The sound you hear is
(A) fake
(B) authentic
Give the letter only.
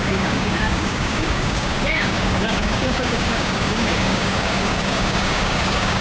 A